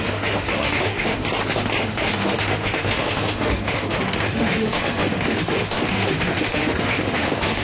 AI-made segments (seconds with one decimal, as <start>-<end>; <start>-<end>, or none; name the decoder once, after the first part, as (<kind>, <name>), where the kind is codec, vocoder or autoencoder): 0.0-1.2 (autoencoder, DAC-VAE); 1.8-7.6